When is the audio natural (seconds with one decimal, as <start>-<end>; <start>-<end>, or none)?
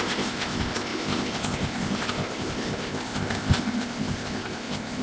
none